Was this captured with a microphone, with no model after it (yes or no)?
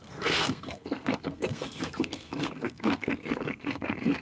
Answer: no